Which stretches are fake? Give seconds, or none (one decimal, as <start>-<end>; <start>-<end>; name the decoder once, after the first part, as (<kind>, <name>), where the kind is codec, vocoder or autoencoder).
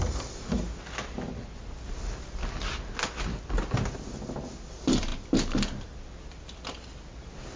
none